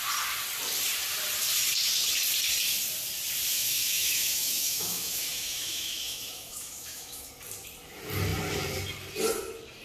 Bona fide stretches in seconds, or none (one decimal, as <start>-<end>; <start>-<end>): 0.0-3.5; 7.3-9.8